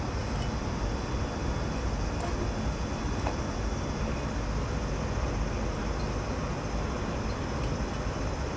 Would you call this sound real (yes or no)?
yes